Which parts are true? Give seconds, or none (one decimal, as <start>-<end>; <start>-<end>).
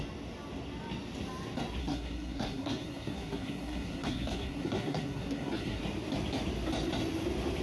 0.0-1.8; 5.8-7.6